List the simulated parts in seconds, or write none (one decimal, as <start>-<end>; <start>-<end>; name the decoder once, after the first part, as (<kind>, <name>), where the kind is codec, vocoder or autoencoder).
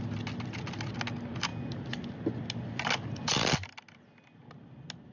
none